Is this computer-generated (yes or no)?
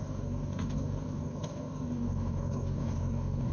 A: yes